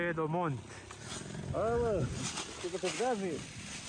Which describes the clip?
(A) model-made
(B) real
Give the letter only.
B